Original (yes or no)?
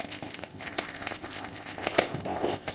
no